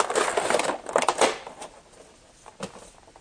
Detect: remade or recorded recorded